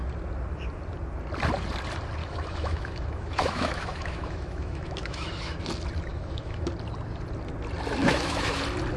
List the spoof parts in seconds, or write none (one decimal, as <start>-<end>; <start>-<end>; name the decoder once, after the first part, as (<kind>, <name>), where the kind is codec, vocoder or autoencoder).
2.2-5.6 (autoencoder, DAC-VAE); 6.1-6.7; 8.0-8.6